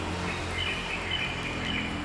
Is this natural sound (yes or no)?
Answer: yes